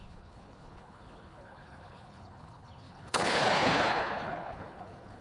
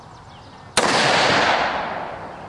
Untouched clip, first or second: second